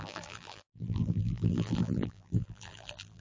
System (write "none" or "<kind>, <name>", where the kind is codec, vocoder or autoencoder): vocoder, BigVGAN v2